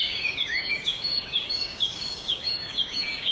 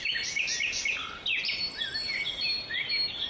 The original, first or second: second